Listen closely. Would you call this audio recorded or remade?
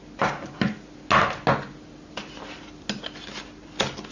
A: recorded